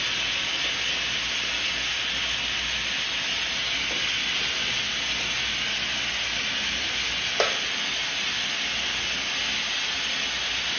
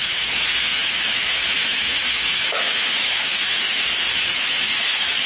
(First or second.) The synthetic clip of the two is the second